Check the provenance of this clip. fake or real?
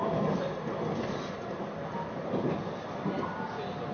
real